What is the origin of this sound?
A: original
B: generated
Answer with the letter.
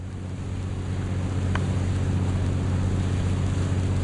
A